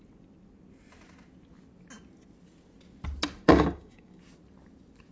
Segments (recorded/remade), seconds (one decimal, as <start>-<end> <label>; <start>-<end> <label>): 0.0-3.4 recorded; 3.4-4.2 remade; 4.2-5.1 recorded